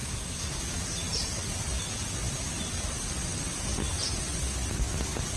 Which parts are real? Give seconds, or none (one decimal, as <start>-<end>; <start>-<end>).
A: 0.6-5.4